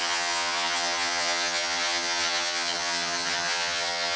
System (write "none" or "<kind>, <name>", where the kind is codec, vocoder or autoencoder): vocoder, HiFi-GAN